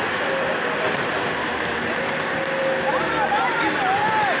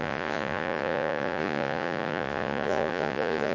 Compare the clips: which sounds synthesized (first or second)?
second